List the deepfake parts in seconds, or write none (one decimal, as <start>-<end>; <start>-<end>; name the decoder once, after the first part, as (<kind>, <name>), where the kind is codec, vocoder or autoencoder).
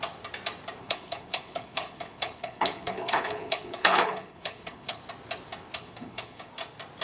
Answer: 0.8-5.0 (codec, HILCodec); 5.8-6.5